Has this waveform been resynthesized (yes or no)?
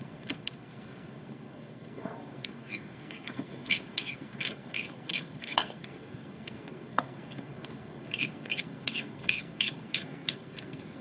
yes